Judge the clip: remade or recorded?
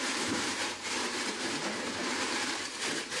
remade